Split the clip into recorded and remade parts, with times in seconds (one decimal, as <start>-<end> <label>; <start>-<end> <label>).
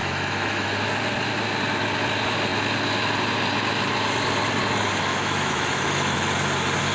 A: 0.0-0.7 remade; 0.7-5.1 recorded; 5.1-6.3 remade; 6.3-6.9 recorded